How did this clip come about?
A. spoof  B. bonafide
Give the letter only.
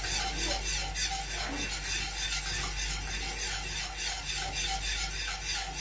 B